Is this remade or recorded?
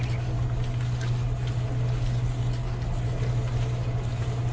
recorded